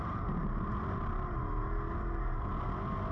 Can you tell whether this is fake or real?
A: real